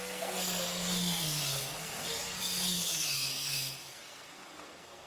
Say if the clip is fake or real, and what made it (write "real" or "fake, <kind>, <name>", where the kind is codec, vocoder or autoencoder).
fake, codec, SNAC